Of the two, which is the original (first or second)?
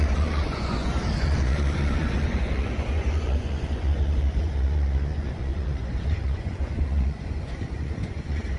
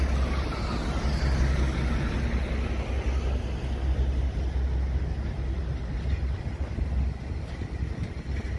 second